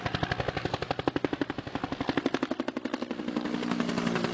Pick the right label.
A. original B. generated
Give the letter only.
A